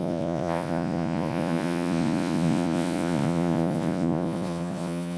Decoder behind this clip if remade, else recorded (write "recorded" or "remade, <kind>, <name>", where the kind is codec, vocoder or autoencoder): remade, vocoder, Vocos